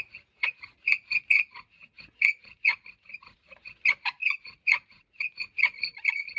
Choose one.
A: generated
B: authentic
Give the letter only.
A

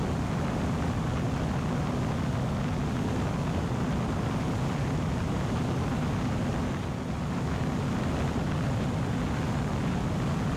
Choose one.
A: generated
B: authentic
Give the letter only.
B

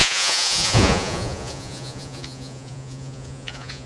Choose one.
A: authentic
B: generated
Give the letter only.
B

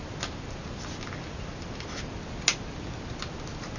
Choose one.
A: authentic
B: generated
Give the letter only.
A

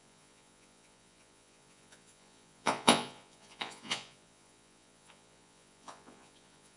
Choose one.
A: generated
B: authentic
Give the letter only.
A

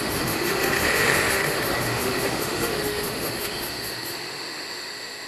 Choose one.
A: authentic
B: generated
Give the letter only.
B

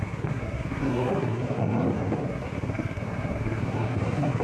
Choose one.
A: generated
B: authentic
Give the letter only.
A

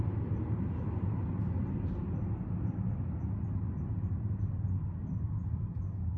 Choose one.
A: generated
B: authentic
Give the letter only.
B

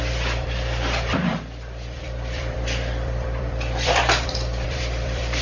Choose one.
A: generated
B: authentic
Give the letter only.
A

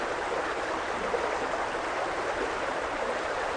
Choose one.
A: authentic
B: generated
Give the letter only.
A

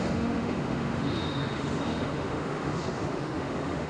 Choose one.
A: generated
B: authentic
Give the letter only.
A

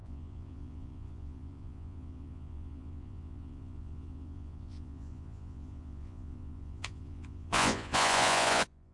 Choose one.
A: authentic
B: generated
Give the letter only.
B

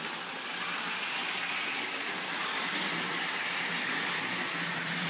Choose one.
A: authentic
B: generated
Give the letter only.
A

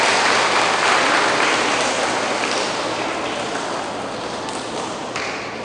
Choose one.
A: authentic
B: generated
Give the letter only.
A